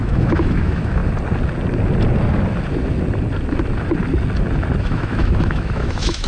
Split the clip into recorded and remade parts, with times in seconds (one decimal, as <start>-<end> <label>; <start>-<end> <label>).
0.0-1.0 remade; 1.0-4.8 recorded; 4.8-6.3 remade